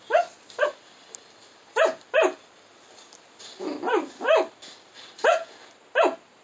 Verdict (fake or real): real